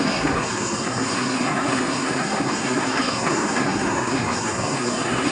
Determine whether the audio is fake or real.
fake